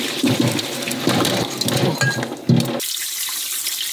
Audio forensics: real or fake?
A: real